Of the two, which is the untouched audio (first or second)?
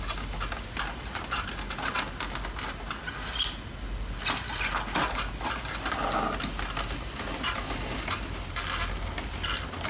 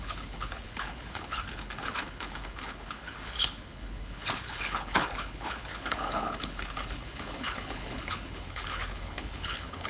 first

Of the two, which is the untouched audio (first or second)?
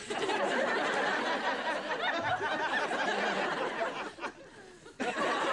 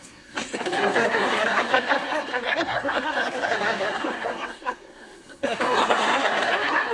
first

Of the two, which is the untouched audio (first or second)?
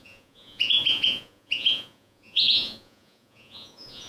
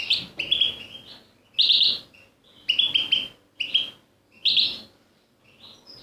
second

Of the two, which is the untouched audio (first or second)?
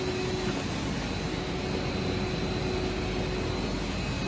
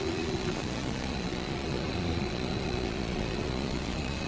first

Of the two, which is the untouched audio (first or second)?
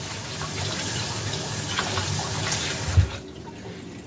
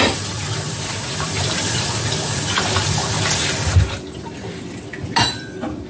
first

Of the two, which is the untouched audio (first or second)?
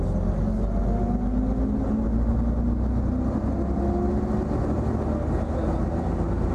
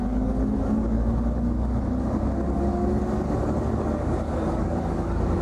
first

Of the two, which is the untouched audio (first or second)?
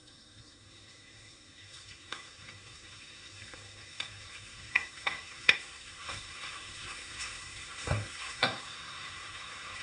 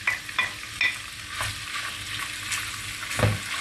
second